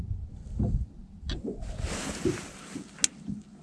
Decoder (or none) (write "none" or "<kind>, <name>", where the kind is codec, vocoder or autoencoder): none